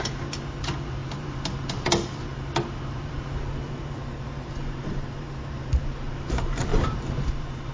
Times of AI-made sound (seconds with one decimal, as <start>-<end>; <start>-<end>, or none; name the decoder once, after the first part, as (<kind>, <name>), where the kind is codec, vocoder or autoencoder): 0.0-6.7 (vocoder, BigVGAN v2); 7.3-7.7